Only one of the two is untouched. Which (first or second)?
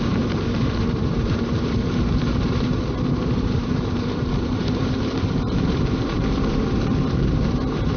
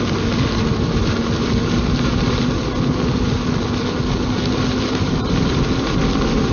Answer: second